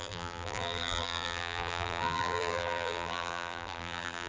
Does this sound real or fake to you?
fake